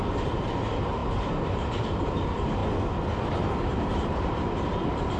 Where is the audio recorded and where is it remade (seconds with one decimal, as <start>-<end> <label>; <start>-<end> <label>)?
0.0-2.6 remade; 2.6-3.4 recorded; 3.4-5.2 remade